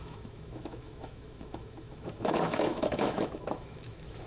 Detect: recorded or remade remade